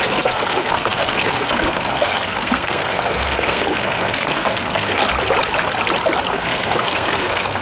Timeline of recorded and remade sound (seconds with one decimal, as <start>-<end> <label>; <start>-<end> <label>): 0.0-5.0 remade; 5.0-6.3 recorded; 6.3-7.6 remade